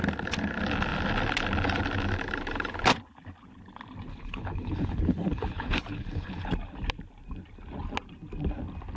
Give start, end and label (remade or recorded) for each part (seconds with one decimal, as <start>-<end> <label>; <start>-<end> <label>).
0.0-4.1 recorded; 4.1-6.5 remade; 6.5-9.0 recorded